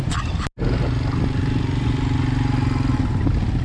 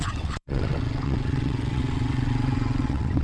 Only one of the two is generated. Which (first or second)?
second